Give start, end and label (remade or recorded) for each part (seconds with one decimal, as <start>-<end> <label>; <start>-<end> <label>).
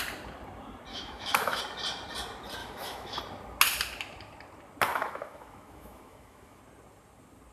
0.0-0.9 recorded; 0.9-1.6 remade; 1.6-2.6 recorded; 2.6-3.2 remade; 3.2-4.9 recorded; 4.9-6.6 remade; 6.6-7.5 recorded